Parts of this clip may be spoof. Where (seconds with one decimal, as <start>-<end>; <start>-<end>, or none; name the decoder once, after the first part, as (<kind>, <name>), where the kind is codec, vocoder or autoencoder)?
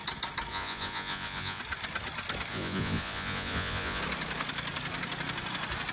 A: 0.5-1.6 (vocoder, Vocos); 2.5-4.0